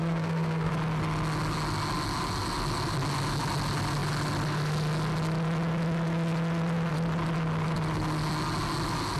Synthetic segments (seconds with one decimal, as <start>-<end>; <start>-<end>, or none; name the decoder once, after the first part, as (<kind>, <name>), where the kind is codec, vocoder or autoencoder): 0.0-0.7 (codec, SNAC)